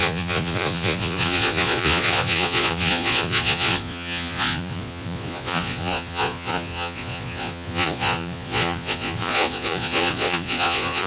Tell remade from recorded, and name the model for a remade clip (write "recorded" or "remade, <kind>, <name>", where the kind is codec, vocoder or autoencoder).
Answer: remade, vocoder, Vocos